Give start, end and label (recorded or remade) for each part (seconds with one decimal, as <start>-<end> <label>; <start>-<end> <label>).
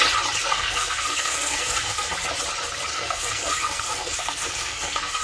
0.0-0.4 recorded; 0.4-2.1 remade; 2.1-2.9 recorded; 2.9-5.2 remade